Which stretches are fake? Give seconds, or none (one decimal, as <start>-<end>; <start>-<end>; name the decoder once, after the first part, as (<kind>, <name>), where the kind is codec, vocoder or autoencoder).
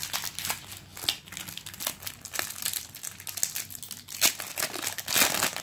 none